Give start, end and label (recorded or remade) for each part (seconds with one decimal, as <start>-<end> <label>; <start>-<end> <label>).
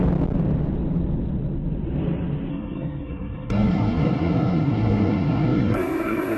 0.0-2.5 recorded; 2.5-6.4 remade